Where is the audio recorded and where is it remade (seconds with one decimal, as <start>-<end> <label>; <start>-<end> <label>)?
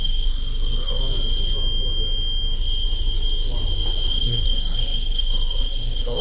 0.0-1.0 remade; 1.0-4.1 recorded; 4.1-6.2 remade